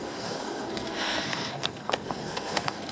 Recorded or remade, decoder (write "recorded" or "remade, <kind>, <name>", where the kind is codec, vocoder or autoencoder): remade, codec, SNAC